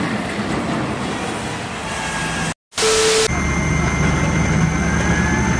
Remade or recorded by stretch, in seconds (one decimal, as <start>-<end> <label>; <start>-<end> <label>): 0.0-5.6 recorded